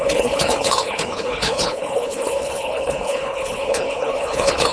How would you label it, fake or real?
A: fake